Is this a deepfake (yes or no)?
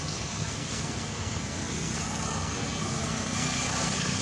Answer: yes